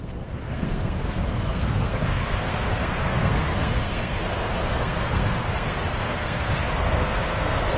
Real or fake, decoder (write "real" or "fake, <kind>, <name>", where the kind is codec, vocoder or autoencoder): fake, codec, SNAC